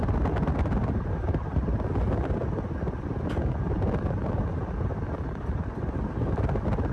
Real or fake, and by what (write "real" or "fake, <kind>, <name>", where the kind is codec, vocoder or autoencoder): real